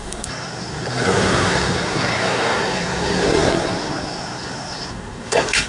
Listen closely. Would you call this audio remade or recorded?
remade